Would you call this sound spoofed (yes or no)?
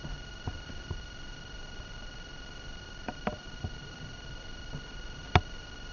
no